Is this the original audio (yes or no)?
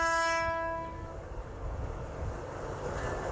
no